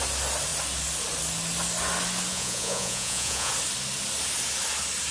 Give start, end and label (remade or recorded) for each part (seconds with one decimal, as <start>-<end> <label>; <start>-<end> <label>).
0.0-2.3 recorded; 2.3-3.5 remade; 3.5-5.1 recorded